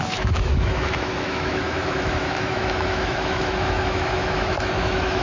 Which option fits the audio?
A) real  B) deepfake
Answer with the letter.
B